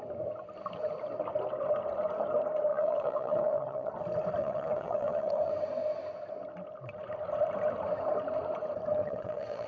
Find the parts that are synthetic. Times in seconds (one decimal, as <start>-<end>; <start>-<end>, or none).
2.7-3.9; 4.4-5.5; 9.0-9.7